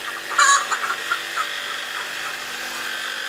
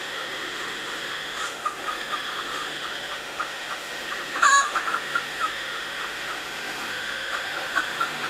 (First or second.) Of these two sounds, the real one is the first